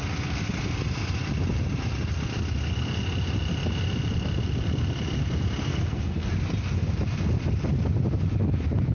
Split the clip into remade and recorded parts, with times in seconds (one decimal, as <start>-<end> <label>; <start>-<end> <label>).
0.0-5.7 recorded; 5.7-6.3 remade; 6.3-8.9 recorded